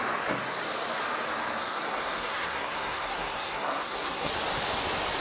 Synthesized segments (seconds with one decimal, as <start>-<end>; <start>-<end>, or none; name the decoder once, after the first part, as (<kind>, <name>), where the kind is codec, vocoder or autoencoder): 1.6-4.3 (codec, SNAC)